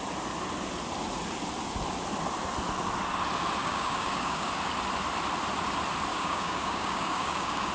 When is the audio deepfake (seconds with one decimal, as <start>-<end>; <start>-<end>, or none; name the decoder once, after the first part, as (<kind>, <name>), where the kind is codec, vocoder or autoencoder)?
3.6-4.5 (codec, DAC); 6.1-7.7